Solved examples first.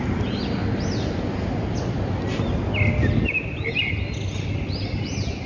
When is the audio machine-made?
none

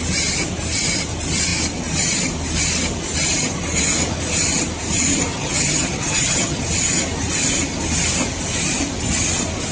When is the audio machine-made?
5.3-6.6 (vocoder, HiFi-GAN)

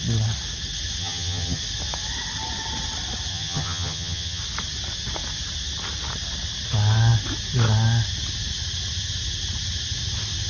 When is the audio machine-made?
1.0-1.6 (vocoder, HiFi-GAN); 3.3-4.4